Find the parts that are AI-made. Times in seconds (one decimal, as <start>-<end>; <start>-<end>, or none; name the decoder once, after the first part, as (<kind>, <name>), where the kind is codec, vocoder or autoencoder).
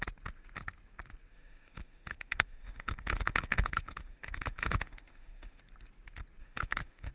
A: 1.3-5.6 (autoencoder, DAC-VAE); 6.4-7.1